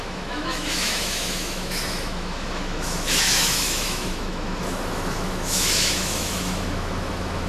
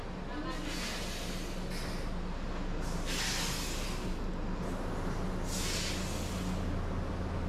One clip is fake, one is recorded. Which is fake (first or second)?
first